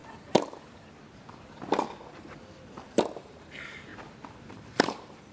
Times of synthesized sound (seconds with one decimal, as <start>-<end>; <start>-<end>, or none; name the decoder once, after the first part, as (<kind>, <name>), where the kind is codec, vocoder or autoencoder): 3.2-3.9 (vocoder, BigVGAN v2); 4.5-5.3